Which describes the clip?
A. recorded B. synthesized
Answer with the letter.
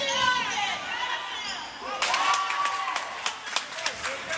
A